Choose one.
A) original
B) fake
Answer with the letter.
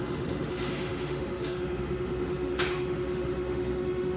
B